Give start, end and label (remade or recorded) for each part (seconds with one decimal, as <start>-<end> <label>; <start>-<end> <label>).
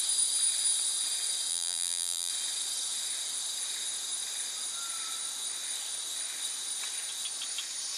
0.0-1.5 recorded; 1.5-2.3 remade; 2.3-8.0 recorded